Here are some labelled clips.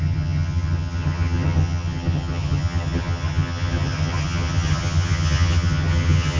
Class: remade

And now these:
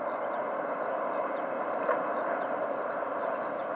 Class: recorded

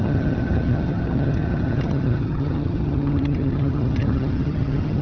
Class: remade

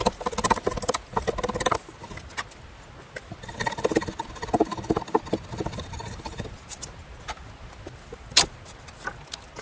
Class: recorded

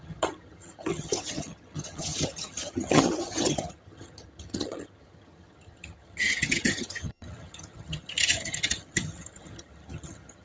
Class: remade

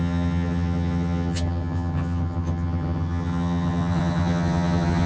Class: remade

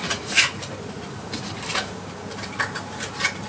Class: recorded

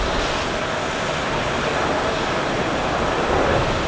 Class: recorded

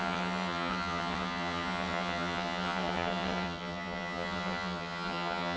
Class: remade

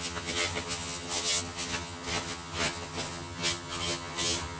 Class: remade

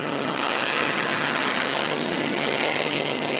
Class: remade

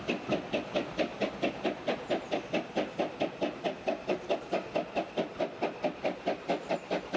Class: recorded